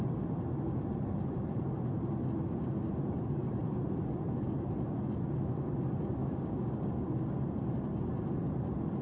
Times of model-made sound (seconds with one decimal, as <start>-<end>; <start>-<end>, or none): 6.2-6.9